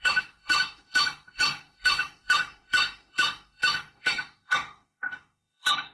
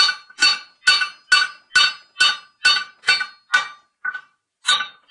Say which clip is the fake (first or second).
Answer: first